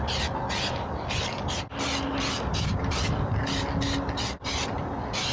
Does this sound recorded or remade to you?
recorded